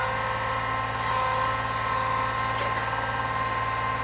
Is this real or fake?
real